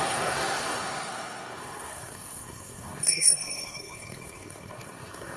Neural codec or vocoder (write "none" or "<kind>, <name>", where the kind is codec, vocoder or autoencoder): codec, SNAC